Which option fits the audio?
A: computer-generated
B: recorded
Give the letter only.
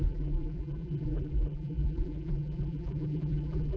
A